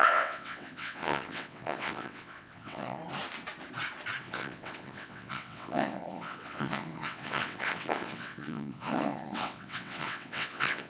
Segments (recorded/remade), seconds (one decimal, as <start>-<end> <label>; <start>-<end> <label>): 0.0-3.0 remade; 3.0-4.2 recorded; 4.2-10.9 remade